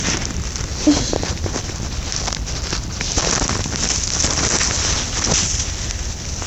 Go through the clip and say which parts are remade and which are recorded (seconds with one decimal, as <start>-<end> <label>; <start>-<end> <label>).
0.0-6.5 recorded